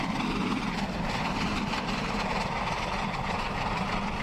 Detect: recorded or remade recorded